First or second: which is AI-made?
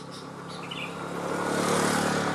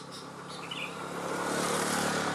second